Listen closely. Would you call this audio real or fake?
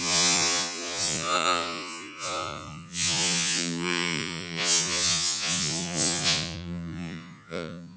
fake